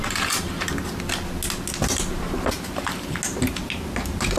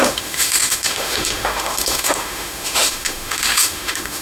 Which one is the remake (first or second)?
second